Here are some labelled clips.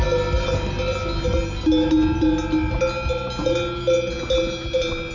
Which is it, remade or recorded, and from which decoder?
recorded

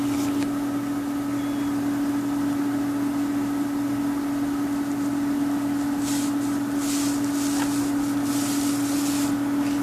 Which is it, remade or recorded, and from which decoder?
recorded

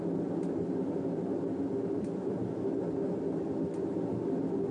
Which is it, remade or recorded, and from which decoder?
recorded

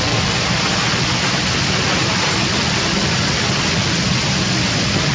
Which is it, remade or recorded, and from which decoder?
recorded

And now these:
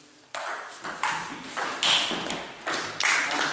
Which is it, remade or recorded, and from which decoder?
recorded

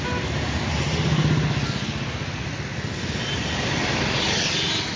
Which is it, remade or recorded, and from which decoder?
recorded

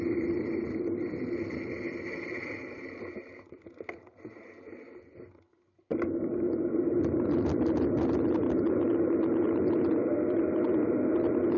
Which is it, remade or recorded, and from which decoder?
recorded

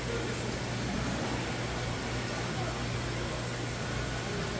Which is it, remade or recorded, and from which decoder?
recorded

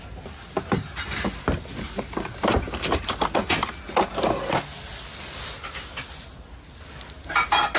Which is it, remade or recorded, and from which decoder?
recorded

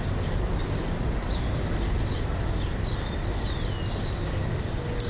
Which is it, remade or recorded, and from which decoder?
recorded